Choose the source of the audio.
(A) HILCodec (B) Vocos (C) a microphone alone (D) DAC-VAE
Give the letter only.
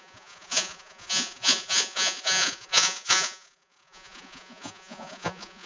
B